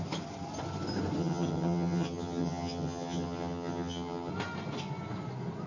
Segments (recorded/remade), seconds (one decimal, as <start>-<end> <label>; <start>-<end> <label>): 0.0-1.2 recorded; 1.2-4.3 remade; 4.3-5.7 recorded